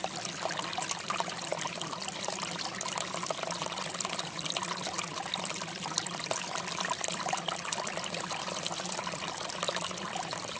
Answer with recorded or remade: recorded